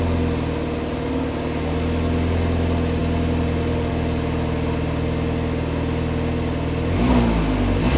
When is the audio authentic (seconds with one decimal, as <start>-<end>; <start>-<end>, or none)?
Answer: 0.0-8.0